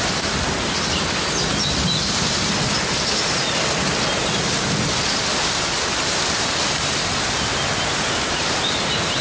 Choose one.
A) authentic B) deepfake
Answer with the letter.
A